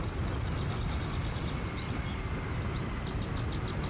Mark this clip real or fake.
real